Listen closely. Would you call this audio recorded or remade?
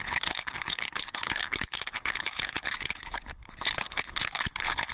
remade